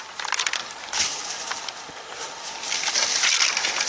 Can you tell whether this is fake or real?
real